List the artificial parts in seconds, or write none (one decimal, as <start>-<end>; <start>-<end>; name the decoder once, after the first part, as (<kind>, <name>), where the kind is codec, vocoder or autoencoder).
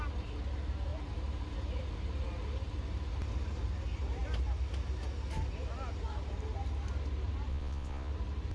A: 7.5-8.1 (vocoder, Vocos)